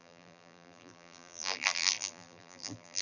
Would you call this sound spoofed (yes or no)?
yes